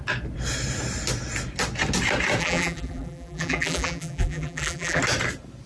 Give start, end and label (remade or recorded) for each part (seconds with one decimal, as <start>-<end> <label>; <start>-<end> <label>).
0.0-2.4 recorded; 2.4-5.0 remade; 5.0-5.7 recorded